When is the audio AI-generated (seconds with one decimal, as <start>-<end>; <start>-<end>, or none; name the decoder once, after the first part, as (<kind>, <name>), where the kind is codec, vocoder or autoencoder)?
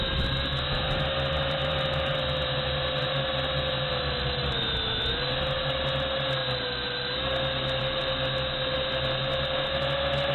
none